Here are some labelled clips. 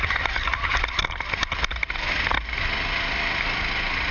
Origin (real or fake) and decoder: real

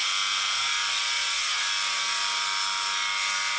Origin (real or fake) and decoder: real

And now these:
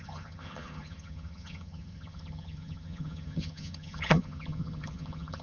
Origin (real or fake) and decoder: fake, vocoder, HiFi-GAN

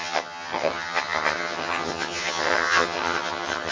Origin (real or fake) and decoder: fake, vocoder, HiFi-GAN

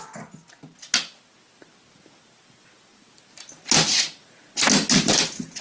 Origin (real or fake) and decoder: real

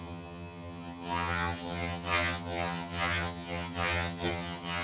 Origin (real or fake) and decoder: fake, vocoder, HiFi-GAN